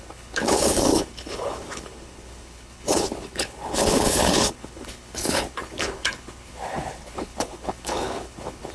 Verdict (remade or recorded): remade